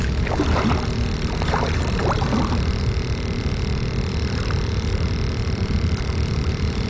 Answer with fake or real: real